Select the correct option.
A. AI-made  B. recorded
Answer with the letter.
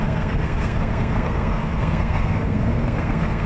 A